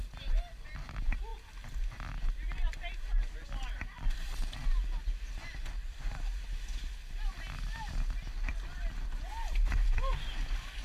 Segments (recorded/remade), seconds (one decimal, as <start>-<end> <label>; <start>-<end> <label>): 0.0-10.8 recorded